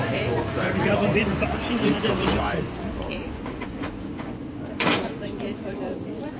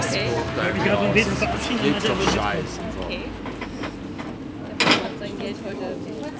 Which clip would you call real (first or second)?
second